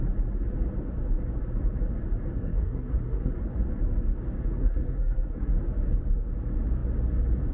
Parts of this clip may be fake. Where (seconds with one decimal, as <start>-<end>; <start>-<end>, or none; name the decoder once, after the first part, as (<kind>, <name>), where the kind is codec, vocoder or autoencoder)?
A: 2.4-3.3 (codec, SNAC); 4.6-5.5